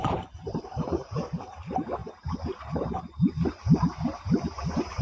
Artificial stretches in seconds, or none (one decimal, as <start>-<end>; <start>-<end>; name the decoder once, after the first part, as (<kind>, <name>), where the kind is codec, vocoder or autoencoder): 0.0-5.0 (vocoder, BigVGAN v2)